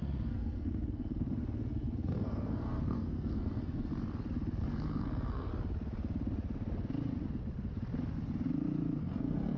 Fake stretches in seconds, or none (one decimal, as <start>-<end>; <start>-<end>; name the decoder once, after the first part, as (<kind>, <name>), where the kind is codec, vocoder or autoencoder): 0.0-3.9 (codec, SNAC); 4.6-5.5; 9.0-9.6